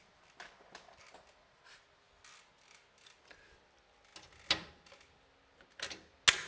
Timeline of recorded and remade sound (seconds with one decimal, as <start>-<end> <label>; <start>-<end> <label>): 0.0-6.5 recorded